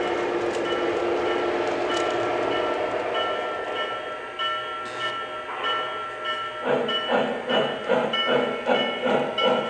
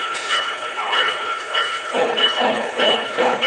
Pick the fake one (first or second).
second